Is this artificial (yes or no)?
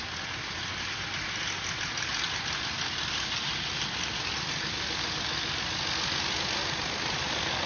no